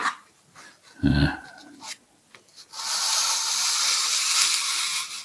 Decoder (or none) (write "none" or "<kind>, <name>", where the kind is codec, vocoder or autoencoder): none